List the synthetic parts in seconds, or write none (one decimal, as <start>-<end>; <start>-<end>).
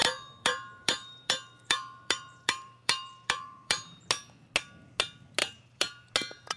0.0-4.0; 5.4-6.1